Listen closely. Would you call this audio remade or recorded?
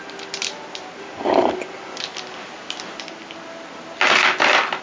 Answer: recorded